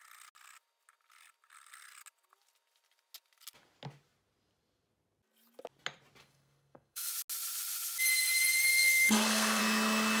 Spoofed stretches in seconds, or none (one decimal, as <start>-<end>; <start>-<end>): 6.2-7.1; 8.7-9.6